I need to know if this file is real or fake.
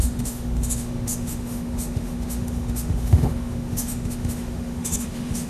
fake